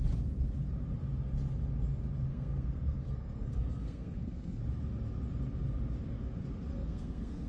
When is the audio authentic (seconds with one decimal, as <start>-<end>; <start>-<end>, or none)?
0.0-2.3; 4.6-6.7